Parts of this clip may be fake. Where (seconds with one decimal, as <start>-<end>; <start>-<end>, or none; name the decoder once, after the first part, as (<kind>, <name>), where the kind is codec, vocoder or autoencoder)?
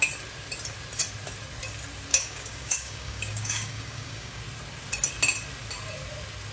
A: 2.1-4.4 (codec, DAC)